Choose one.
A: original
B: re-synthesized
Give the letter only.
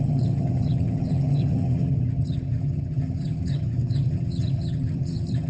B